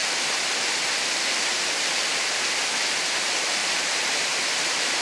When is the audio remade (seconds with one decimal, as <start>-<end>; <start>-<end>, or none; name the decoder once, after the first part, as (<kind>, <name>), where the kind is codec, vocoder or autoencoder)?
3.6-5.0 (vocoder, BigVGAN v2)